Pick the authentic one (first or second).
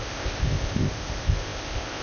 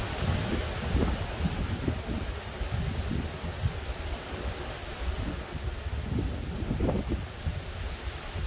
second